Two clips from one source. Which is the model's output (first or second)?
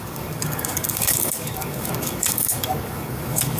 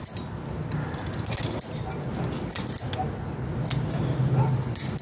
first